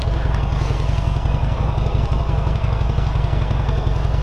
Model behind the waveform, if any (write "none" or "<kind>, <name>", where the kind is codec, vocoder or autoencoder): codec, SNAC